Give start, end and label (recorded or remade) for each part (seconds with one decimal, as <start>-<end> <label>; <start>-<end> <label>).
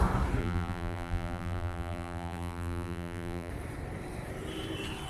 0.0-0.4 recorded; 0.4-3.5 remade; 3.5-5.1 recorded